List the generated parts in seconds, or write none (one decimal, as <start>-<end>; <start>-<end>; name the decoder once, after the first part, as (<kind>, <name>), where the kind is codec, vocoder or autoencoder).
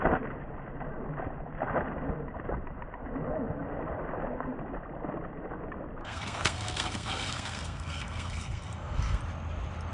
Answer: 6.0-9.2 (codec, SNAC)